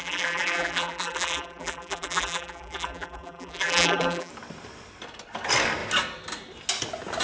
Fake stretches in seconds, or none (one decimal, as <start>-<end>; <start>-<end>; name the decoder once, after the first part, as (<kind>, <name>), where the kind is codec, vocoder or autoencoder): 0.0-4.3 (vocoder, BigVGAN v2)